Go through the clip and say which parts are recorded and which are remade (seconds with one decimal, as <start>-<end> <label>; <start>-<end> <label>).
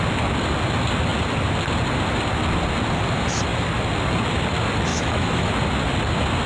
0.0-4.9 recorded; 4.9-5.5 remade; 5.5-6.5 recorded